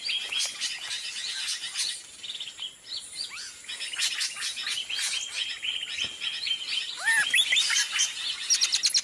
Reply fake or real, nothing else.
real